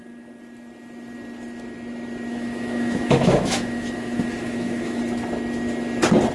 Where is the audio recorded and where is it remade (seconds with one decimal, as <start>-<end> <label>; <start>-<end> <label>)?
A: 0.0-2.3 recorded; 2.3-5.0 remade; 5.0-6.3 recorded